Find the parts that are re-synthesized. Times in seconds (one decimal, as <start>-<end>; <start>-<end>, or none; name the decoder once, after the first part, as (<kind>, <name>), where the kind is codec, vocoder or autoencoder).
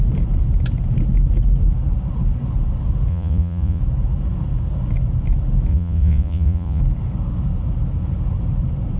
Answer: 3.1-3.8 (vocoder, Vocos); 5.7-6.8